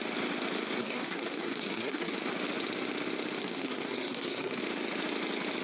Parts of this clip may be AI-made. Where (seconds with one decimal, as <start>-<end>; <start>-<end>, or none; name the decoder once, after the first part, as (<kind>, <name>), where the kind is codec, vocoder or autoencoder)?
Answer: 0.8-2.1 (codec, SNAC); 3.4-4.6